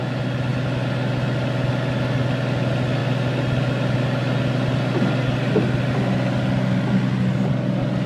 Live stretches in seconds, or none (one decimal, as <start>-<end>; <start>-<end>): 0.0-8.1